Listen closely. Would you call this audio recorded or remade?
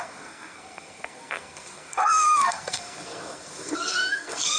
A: remade